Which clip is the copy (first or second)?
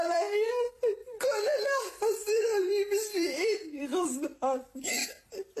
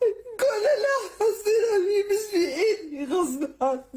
first